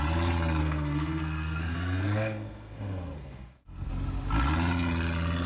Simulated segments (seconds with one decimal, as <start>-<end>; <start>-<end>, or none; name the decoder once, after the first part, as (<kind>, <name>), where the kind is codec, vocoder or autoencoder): 0.6-3.9 (codec, SNAC)